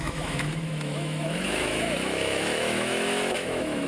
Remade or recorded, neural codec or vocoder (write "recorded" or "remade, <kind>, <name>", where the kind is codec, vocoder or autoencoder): remade, autoencoder, DAC-VAE